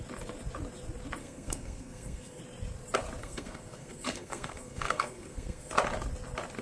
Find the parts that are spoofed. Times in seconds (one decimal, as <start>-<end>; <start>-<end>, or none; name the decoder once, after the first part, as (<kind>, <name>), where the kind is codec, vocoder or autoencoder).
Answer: 1.2-2.4 (codec, SNAC); 3.2-5.7